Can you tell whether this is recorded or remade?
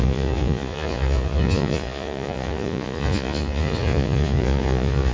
remade